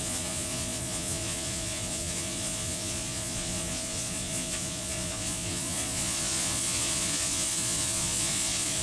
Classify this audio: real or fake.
fake